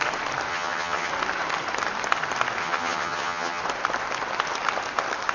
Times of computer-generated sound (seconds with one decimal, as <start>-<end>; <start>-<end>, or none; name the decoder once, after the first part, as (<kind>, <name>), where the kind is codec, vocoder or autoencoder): 0.5-1.1 (vocoder, HiFi-GAN); 2.6-3.6